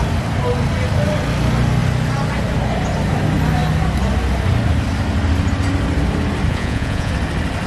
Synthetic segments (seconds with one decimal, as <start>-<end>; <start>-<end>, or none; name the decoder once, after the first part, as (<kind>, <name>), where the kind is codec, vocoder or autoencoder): 6.5-7.1 (vocoder, Vocos)